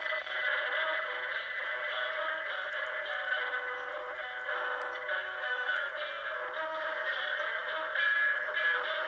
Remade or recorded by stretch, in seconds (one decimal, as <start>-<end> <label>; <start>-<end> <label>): 0.0-5.2 recorded; 5.2-5.9 remade; 5.9-9.1 recorded